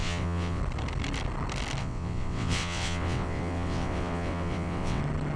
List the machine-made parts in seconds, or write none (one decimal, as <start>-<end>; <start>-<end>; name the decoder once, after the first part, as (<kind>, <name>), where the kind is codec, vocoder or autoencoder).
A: 0.0-0.6 (vocoder, WaveNeXt); 1.8-5.0